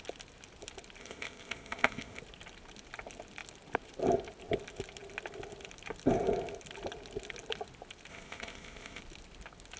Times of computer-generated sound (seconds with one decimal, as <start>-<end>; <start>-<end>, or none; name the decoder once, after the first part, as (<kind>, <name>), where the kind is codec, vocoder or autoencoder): 1.0-2.2 (codec, ZipCodec); 8.1-9.0